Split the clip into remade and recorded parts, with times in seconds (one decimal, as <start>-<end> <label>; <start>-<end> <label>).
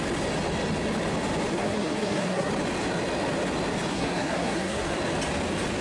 0.0-1.5 recorded; 1.5-2.5 remade; 2.5-3.9 recorded; 3.9-5.0 remade; 5.0-5.8 recorded